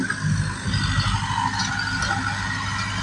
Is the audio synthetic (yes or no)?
no